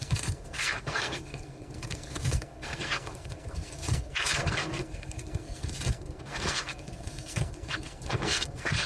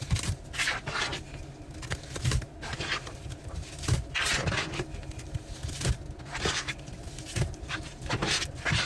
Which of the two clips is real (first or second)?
second